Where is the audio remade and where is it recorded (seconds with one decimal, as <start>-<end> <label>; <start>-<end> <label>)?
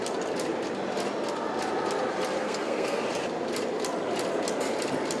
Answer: 0.0-2.4 recorded; 2.4-3.0 remade; 3.0-5.2 recorded